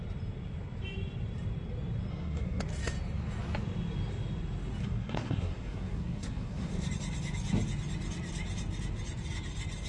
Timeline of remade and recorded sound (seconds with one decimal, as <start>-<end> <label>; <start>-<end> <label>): 0.0-2.1 recorded; 2.1-2.6 remade; 2.6-4.8 recorded; 4.8-6.9 remade; 6.9-9.9 recorded